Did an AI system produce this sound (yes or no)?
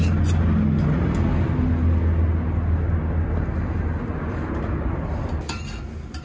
no